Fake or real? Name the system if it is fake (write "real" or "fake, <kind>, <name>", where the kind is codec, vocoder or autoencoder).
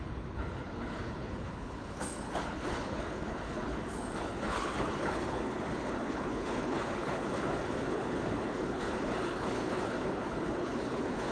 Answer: fake, codec, HILCodec